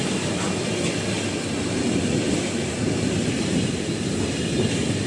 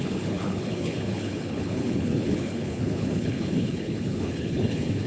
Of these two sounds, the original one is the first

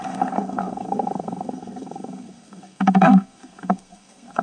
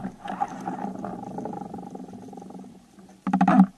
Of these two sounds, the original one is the second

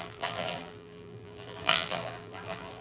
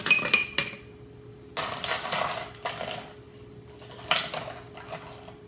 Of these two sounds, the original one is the second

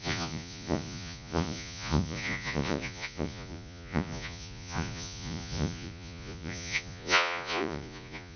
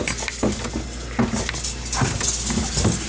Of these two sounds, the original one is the second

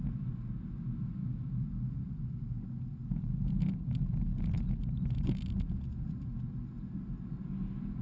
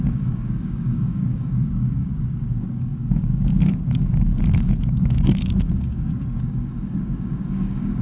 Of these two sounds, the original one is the first